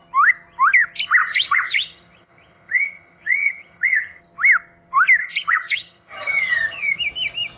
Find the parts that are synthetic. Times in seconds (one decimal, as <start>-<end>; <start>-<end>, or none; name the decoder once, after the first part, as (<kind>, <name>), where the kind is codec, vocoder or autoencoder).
1.2-4.2 (vocoder, HiFi-GAN); 5.2-7.0